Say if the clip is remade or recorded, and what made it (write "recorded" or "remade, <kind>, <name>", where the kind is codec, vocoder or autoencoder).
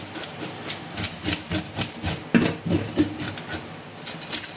recorded